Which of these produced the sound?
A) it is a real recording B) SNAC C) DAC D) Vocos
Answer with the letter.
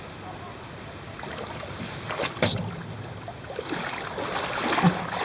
A